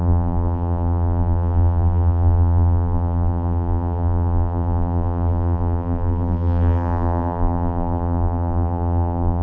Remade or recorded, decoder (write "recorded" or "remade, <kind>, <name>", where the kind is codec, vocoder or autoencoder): remade, vocoder, BigVGAN v2